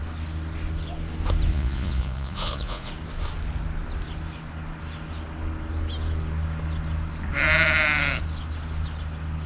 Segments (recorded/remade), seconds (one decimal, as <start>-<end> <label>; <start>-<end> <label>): 0.0-1.5 recorded; 1.5-2.9 remade; 2.9-9.5 recorded